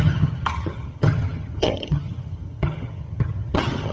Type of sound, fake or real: fake